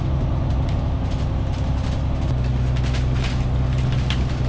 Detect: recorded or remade recorded